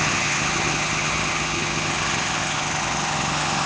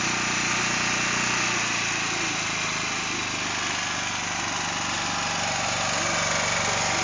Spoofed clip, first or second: first